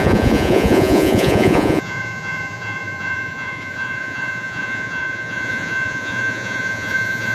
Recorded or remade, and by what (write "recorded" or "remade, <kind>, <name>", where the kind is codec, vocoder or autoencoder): remade, vocoder, Vocos